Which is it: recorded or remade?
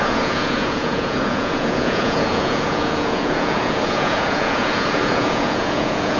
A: remade